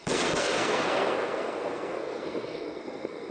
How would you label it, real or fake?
fake